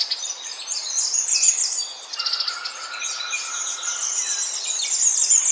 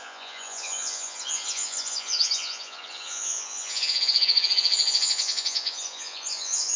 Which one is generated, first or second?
second